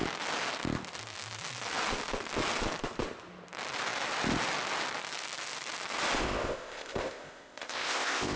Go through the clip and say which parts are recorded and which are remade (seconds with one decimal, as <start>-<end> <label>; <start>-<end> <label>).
0.0-6.2 recorded; 6.2-8.4 remade